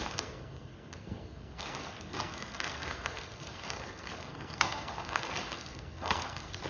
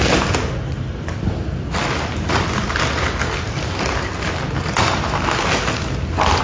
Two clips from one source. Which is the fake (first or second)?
first